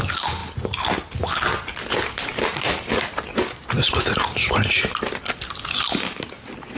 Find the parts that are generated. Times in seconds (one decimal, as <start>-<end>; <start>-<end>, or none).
none